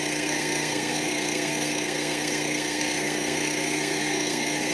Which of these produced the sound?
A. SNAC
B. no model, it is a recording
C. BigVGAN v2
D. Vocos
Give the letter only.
A